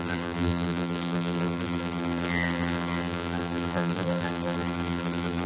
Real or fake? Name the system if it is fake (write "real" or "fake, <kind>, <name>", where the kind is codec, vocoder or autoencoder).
fake, vocoder, BigVGAN v2